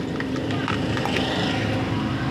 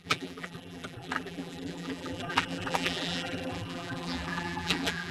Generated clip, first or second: second